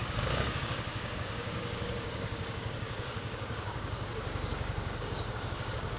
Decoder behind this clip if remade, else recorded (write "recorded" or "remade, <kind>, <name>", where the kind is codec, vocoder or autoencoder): remade, codec, DAC